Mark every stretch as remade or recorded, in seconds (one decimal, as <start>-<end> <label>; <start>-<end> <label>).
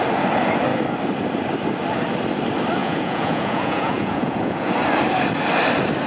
0.0-2.8 recorded; 2.8-4.7 remade; 4.7-6.1 recorded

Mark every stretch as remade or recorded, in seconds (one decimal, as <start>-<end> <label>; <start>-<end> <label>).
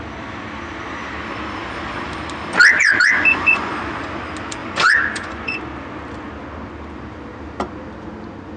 0.0-2.8 recorded; 2.8-3.7 remade; 3.7-4.6 recorded; 4.6-5.6 remade; 5.6-8.6 recorded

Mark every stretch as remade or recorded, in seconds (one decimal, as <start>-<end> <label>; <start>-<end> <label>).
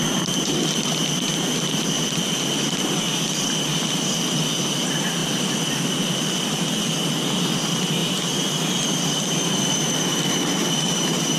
0.0-8.0 recorded; 8.0-10.1 remade; 10.1-11.4 recorded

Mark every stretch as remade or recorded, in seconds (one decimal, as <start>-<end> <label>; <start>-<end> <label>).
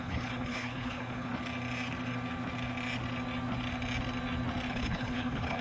0.0-1.3 remade; 1.3-4.7 recorded; 4.7-5.6 remade